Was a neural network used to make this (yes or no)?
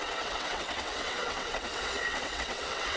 yes